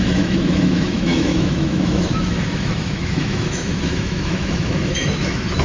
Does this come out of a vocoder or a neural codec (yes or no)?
yes